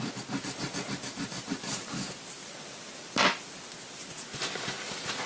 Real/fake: real